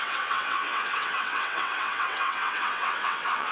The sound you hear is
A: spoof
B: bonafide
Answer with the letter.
A